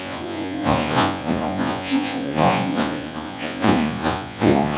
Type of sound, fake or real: fake